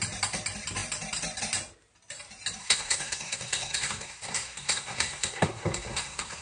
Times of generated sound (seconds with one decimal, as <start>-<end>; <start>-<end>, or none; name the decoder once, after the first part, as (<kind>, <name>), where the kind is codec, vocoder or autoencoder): 2.6-6.4 (codec, SNAC)